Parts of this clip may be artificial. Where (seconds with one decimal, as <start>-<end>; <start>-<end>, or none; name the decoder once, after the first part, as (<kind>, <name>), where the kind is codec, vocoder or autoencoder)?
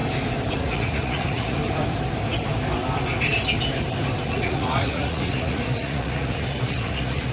0.5-1.6 (vocoder, Vocos); 4.3-7.3